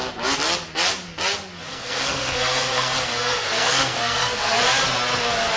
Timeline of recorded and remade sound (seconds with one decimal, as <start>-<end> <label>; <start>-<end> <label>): 0.0-1.7 recorded; 1.7-4.6 remade; 4.6-5.6 recorded